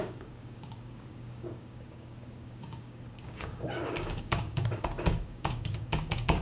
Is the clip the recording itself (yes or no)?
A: no